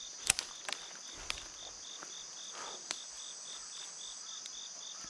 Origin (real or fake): real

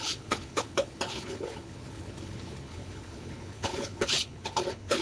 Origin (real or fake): fake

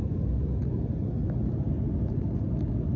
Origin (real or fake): real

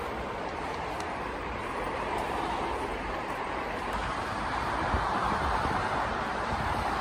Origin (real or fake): fake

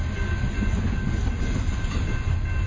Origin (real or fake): real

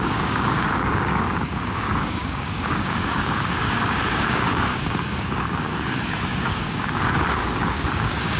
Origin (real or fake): fake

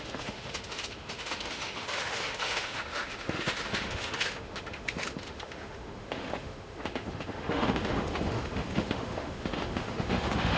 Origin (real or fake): fake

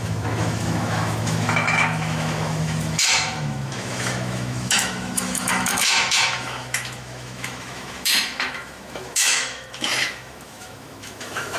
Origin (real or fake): fake